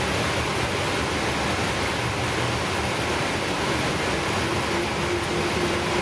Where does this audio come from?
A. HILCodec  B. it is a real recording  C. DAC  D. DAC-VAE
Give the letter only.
B